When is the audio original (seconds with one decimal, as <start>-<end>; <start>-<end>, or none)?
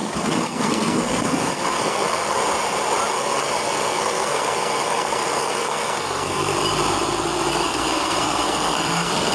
2.4-3.1; 6.5-7.5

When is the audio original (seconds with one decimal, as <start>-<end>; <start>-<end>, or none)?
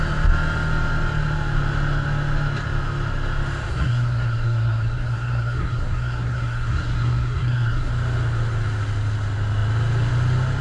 0.0-3.7; 7.9-10.6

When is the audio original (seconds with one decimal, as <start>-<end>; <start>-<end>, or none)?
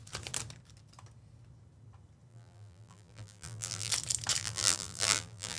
0.0-2.3; 3.9-4.4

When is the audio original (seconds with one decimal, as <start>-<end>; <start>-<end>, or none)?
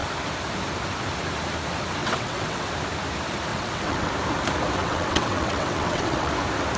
0.0-2.0; 2.7-3.5; 4.1-4.8; 6.3-6.8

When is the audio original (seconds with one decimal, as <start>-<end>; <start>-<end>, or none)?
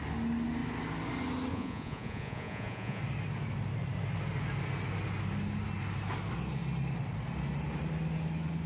0.0-1.5; 3.0-8.7